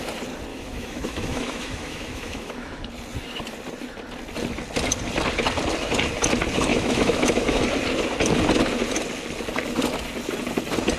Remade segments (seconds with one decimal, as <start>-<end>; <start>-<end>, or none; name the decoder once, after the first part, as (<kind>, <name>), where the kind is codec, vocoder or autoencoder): 0.5-2.9 (autoencoder, DAC-VAE); 6.7-7.6